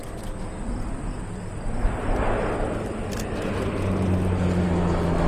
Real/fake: real